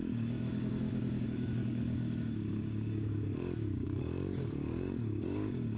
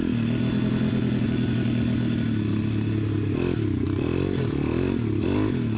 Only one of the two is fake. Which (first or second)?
first